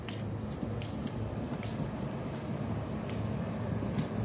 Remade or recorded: recorded